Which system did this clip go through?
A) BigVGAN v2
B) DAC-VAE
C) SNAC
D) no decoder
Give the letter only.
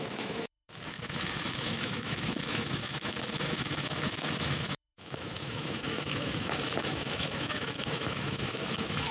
B